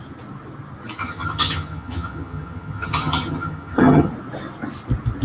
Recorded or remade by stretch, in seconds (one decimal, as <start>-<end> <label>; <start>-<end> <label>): 0.0-1.0 recorded; 1.0-4.1 remade; 4.1-5.2 recorded